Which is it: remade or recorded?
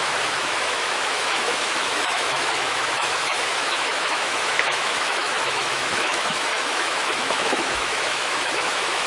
remade